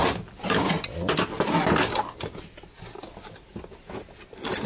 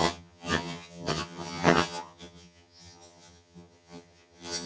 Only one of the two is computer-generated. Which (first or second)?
second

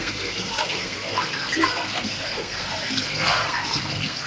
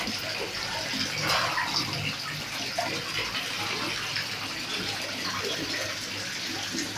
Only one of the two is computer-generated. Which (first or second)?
first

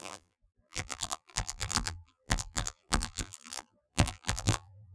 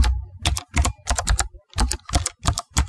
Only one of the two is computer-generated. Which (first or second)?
first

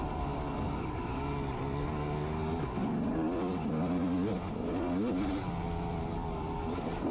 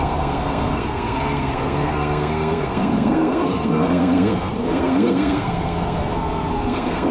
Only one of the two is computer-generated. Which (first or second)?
second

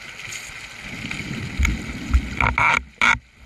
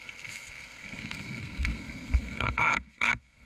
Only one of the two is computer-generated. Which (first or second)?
second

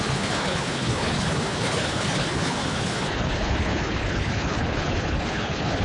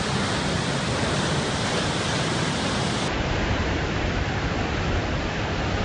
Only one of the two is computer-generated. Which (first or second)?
first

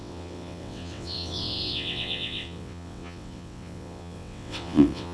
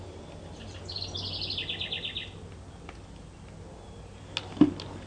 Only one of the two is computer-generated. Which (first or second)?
first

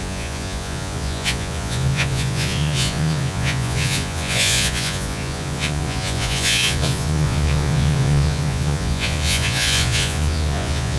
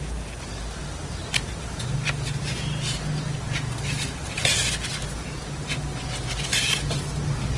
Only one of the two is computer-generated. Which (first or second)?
first